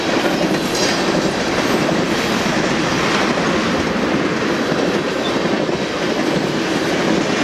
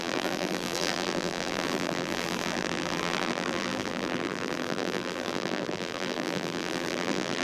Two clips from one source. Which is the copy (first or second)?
second